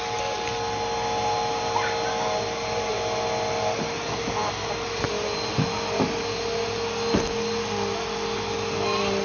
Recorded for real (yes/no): yes